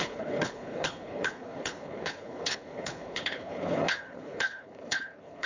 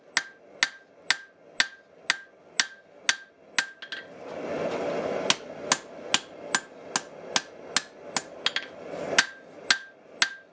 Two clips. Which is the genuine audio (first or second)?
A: second